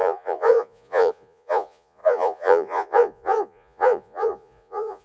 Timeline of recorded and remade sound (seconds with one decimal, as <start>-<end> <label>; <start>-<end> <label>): 0.0-5.0 remade